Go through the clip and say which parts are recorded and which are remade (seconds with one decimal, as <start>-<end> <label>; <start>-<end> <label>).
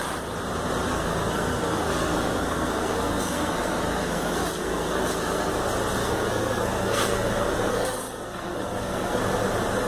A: 0.0-0.9 recorded; 0.9-5.5 remade; 5.5-6.0 recorded; 6.0-9.2 remade; 9.2-9.9 recorded